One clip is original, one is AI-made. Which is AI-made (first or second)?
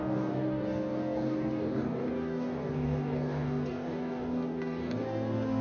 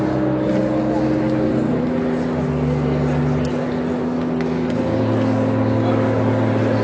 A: first